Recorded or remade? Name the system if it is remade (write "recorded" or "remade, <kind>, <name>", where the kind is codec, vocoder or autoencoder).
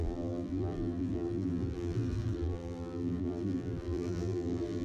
remade, vocoder, BigVGAN v2